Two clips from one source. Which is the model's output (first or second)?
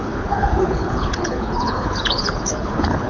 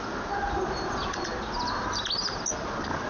first